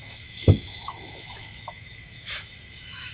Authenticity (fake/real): fake